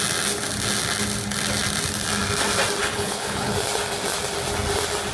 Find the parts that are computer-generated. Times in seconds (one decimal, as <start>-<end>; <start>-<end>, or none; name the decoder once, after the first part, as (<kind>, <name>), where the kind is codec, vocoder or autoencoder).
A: 2.8-3.5 (codec, HILCodec)